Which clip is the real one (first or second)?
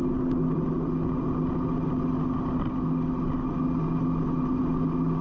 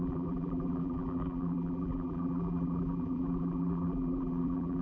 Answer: first